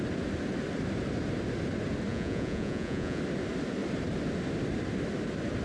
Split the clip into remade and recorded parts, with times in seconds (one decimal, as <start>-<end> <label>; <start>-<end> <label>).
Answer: 0.0-2.1 recorded; 2.1-3.2 remade; 3.2-5.6 recorded